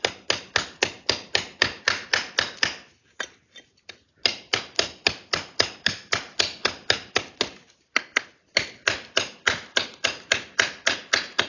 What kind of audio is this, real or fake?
real